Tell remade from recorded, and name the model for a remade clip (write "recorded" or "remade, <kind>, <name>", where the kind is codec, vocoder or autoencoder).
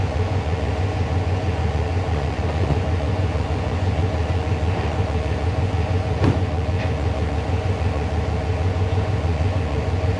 remade, vocoder, Vocos